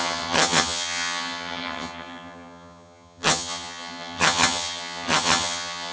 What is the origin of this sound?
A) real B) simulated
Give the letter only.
B